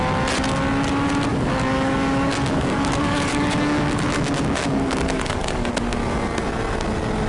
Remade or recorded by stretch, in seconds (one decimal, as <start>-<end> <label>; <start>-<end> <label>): 0.0-1.3 recorded; 1.3-5.7 remade; 5.7-7.3 recorded